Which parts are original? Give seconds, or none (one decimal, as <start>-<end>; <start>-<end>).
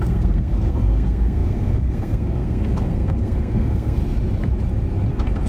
4.0-5.1